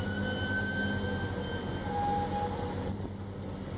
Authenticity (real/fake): real